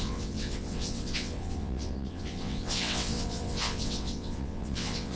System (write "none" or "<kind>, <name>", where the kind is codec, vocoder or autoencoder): vocoder, WaveNeXt